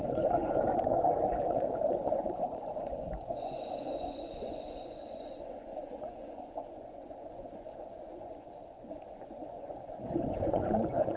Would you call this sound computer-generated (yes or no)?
yes